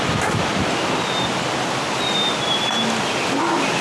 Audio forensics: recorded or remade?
recorded